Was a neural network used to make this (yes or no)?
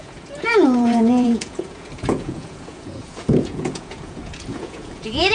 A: yes